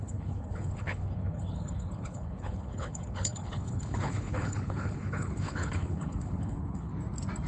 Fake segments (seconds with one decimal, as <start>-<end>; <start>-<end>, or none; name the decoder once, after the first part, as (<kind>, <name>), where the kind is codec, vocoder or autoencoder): 0.0-6.9 (codec, HILCodec)